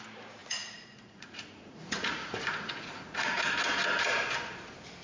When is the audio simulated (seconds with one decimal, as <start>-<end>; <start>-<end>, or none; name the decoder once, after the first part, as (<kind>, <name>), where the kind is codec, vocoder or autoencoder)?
0.4-3.4 (vocoder, Vocos)